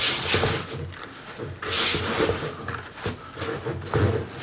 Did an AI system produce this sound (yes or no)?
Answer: no